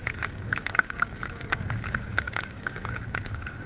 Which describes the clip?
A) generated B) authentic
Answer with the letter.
A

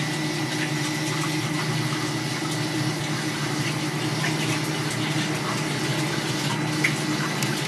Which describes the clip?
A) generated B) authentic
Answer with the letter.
B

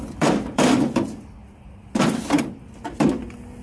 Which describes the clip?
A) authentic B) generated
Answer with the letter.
B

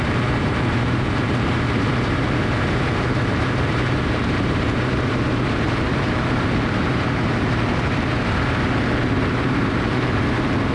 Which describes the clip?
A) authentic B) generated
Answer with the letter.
B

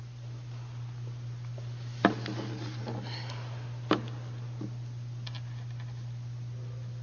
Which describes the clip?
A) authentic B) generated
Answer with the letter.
A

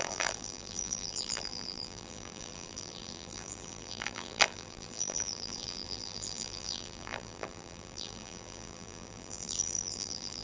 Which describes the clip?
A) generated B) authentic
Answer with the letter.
A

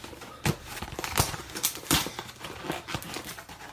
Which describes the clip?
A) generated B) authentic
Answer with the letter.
B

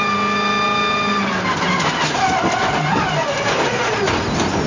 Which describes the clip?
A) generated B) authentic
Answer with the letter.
B